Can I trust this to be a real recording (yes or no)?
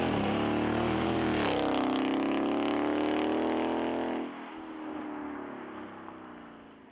yes